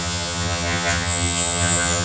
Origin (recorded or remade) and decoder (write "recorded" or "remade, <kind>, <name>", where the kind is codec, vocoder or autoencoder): remade, vocoder, HiFi-GAN